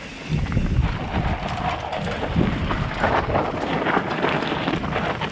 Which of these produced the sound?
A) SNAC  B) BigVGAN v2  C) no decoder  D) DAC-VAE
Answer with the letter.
C